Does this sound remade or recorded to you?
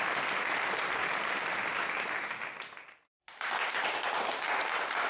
remade